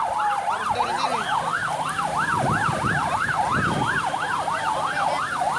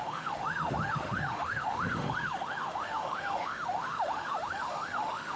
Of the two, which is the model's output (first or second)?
second